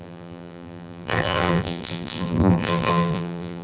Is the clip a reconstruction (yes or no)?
yes